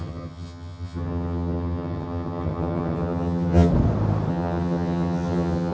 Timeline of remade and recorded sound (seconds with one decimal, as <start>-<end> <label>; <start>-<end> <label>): 0.0-3.7 remade; 3.7-4.3 recorded; 4.3-5.7 remade